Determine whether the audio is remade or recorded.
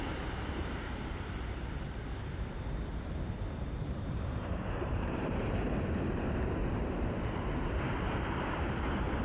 remade